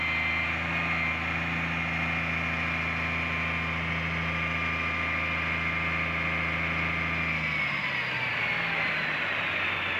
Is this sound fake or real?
real